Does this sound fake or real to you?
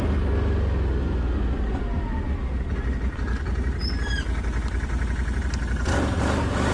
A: real